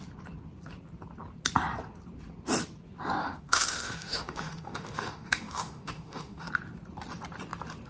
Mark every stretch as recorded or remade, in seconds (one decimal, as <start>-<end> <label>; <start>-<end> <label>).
0.0-3.2 recorded; 3.2-6.5 remade; 6.5-7.9 recorded